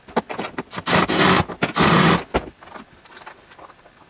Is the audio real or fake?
real